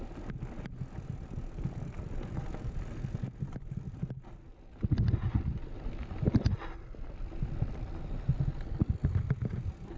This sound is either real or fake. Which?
real